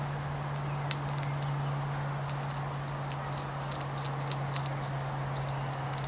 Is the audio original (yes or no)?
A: yes